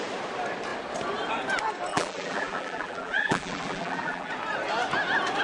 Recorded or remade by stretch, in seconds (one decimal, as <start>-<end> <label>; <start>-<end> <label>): 0.0-1.9 recorded; 1.9-4.3 remade; 4.3-5.4 recorded